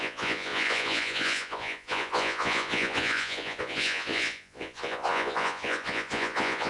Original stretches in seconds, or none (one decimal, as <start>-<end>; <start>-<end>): none